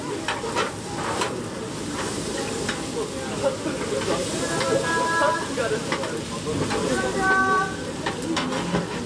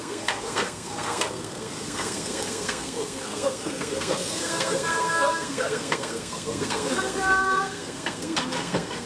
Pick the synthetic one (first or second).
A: second